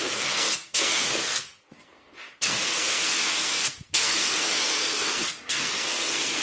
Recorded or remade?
remade